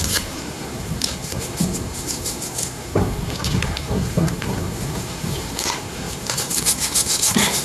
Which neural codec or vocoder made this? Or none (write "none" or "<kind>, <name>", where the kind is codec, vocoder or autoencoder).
codec, SNAC